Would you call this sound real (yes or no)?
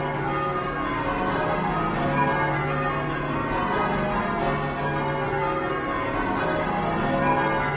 yes